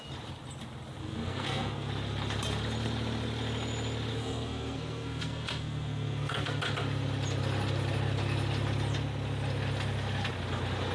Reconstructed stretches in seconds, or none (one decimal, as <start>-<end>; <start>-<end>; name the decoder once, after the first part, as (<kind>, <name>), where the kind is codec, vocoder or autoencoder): 1.0-1.9 (codec, SNAC); 4.1-6.6